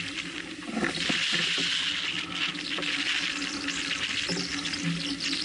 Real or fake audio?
real